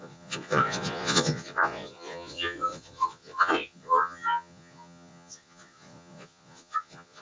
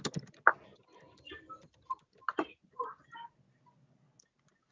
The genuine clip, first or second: second